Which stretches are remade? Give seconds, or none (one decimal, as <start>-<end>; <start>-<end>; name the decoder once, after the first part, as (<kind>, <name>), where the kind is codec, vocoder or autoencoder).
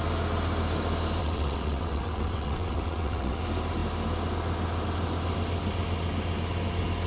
1.2-3.4 (vocoder, WaveNeXt)